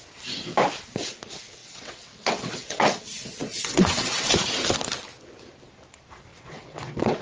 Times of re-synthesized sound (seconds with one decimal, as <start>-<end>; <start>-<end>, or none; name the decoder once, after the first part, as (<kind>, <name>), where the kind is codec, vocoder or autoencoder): 1.6-4.3 (vocoder, WaveNeXt); 6.3-7.2